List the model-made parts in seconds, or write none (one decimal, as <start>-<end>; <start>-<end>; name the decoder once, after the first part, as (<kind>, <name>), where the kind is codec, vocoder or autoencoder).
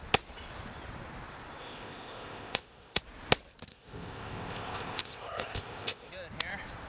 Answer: 1.6-3.0 (codec, ZipCodec); 3.7-6.1